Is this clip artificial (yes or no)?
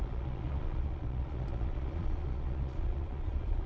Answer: yes